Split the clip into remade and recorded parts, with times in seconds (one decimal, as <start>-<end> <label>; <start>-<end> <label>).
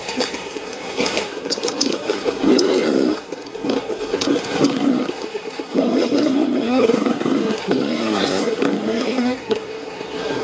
0.0-10.4 remade